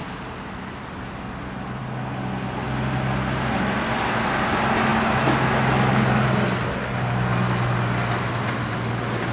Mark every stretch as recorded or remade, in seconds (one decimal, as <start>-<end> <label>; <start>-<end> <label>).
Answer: 0.0-9.3 recorded